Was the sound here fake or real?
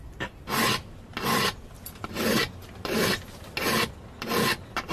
real